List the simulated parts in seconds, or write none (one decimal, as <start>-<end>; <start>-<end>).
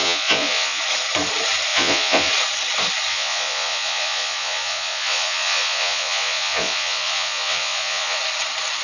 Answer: 0.0-0.8; 1.7-2.3; 3.1-8.2